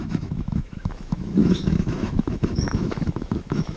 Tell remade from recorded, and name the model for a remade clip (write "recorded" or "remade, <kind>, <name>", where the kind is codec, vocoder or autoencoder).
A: remade, autoencoder, DAC-VAE